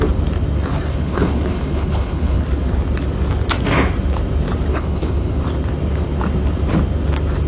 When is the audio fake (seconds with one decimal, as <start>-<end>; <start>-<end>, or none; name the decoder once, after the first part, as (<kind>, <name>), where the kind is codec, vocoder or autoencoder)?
0.9-2.4 (codec, HILCodec); 4.7-5.4